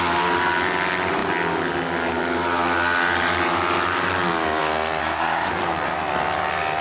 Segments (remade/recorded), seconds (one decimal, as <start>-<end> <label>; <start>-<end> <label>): 0.0-5.0 recorded; 5.0-5.5 remade; 5.5-6.8 recorded